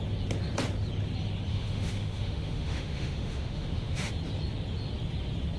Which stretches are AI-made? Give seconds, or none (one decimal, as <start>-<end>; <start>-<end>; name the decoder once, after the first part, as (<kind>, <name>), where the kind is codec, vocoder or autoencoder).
1.5-4.1 (autoencoder, DAC-VAE)